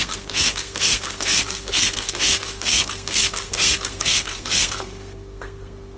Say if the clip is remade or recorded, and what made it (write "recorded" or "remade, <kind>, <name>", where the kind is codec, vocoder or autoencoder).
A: remade, codec, SNAC